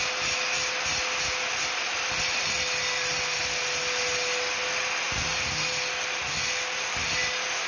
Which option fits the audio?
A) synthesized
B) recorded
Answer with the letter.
B